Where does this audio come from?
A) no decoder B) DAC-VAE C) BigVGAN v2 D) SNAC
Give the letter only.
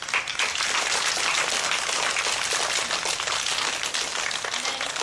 A